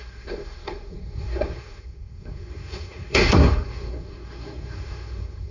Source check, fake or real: fake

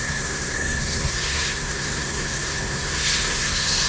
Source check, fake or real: fake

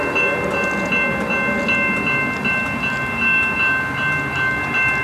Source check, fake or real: real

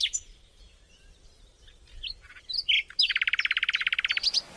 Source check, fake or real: real